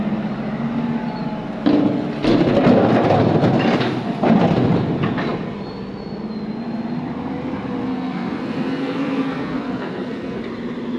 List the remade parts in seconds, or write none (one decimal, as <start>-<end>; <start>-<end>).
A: 7.8-10.4